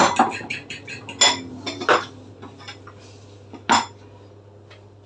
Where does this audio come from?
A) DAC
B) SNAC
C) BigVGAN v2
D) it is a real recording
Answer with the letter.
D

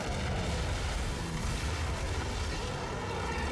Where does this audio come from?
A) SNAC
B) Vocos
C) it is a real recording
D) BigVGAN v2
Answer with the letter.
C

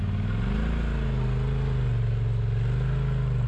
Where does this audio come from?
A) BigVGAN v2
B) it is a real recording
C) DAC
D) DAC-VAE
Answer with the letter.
B